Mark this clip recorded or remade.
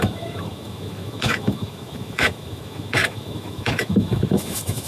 remade